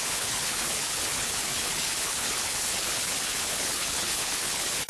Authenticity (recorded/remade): remade